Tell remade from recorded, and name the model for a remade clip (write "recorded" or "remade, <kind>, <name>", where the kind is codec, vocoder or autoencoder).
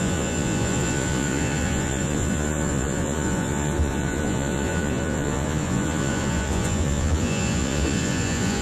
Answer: remade, vocoder, Vocos